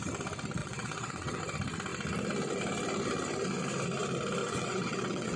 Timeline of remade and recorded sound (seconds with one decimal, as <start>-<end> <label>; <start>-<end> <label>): 0.0-0.6 recorded; 0.6-1.4 remade; 1.4-4.4 recorded; 4.4-5.4 remade